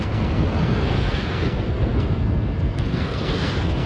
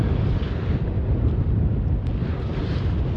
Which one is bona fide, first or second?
second